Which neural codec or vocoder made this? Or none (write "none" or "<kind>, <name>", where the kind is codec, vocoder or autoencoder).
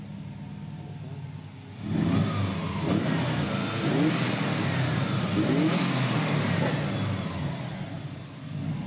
none